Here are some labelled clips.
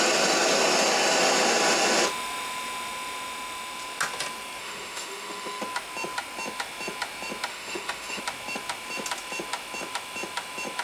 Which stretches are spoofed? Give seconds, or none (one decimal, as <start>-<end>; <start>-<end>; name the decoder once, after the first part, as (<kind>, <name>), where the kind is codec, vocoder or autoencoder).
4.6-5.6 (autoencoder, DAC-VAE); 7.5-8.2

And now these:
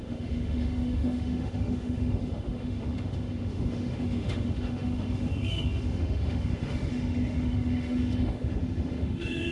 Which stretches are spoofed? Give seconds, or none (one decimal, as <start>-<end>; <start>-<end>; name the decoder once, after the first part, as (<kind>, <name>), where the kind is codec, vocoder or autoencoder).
0.0-9.5 (autoencoder, DAC-VAE)

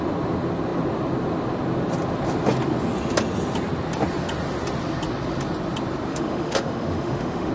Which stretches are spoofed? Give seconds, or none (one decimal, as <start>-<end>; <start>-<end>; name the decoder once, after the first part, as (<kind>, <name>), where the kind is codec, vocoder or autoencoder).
6.1-7.5 (autoencoder, DAC-VAE)

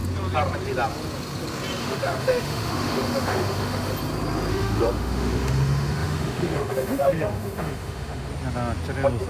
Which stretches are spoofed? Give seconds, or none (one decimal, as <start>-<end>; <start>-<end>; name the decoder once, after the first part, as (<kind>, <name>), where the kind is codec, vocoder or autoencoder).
1.8-3.9 (autoencoder, DAC-VAE); 4.5-8.3

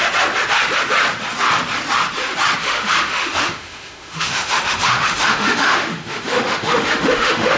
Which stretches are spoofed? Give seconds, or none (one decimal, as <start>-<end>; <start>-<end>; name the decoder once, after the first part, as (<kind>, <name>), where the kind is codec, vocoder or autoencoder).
2.6-7.6 (autoencoder, DAC-VAE)

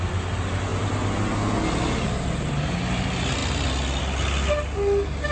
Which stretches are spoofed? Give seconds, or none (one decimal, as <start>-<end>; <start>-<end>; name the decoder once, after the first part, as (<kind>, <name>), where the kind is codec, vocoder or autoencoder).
none